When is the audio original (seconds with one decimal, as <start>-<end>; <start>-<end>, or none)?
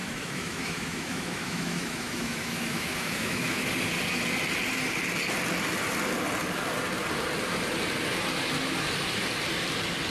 3.7-10.1